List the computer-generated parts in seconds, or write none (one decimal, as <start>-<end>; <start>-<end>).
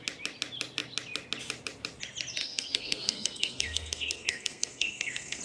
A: 2.4-5.4